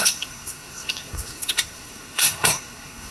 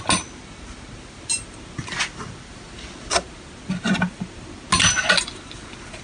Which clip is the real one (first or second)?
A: second